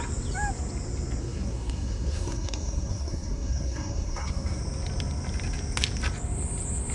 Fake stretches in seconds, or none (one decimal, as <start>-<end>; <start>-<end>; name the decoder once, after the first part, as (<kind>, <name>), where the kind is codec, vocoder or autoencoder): 1.2-4.6 (codec, SNAC)